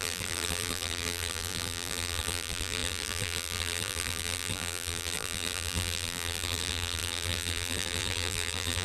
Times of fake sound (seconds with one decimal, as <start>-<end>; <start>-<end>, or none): 0.0-8.8